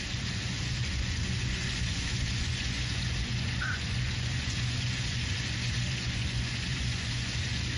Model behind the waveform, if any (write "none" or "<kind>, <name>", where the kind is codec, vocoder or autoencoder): vocoder, Vocos